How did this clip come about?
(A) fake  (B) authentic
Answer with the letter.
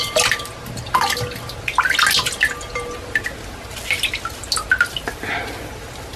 B